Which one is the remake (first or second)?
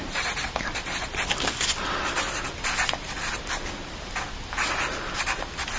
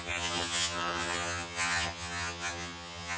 second